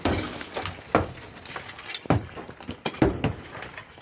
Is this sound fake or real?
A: real